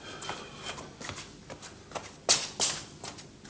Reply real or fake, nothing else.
real